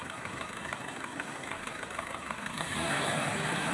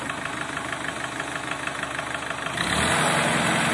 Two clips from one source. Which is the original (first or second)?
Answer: second